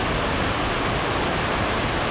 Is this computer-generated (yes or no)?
no